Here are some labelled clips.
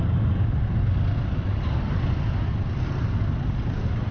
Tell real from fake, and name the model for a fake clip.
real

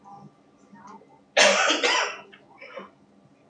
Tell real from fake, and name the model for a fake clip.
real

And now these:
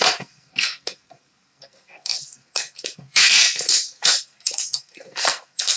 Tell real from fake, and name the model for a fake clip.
fake, codec, SNAC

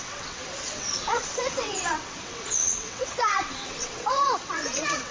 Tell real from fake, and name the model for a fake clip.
fake, vocoder, WaveNeXt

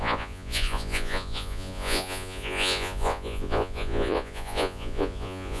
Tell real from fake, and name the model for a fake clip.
fake, vocoder, Vocos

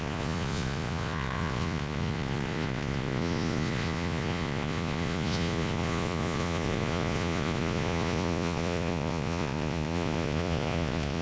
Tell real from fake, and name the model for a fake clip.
fake, vocoder, Vocos